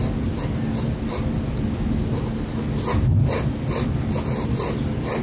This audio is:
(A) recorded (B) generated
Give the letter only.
A